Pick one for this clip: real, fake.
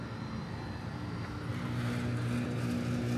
real